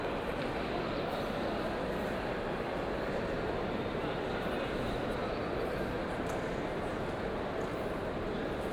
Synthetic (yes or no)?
no